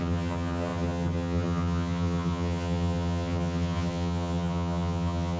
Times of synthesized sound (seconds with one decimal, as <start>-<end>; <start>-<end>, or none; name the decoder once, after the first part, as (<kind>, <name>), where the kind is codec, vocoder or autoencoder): 0.0-5.4 (vocoder, HiFi-GAN)